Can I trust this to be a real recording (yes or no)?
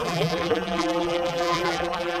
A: no